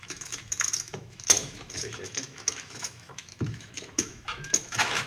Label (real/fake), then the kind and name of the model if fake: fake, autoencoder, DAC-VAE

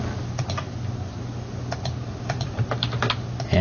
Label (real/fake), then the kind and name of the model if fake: real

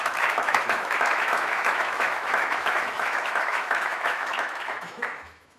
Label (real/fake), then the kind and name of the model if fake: fake, autoencoder, DAC-VAE